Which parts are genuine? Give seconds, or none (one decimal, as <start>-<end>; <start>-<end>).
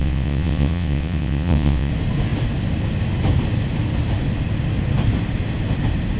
1.9-6.2